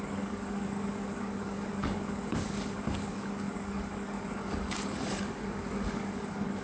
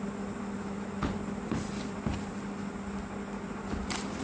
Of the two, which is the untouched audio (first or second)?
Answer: second